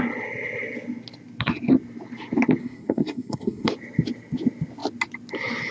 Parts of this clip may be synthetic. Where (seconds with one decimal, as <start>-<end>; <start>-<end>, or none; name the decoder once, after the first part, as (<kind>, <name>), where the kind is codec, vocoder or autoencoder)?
2.6-3.7 (codec, SNAC)